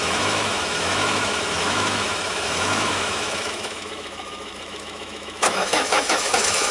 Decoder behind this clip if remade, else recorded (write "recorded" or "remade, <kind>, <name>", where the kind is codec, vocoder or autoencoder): remade, autoencoder, DAC-VAE